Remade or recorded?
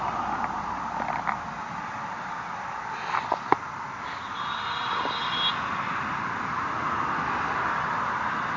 recorded